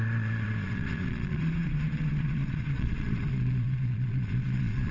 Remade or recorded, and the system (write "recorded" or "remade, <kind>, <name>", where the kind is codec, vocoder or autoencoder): remade, vocoder, Vocos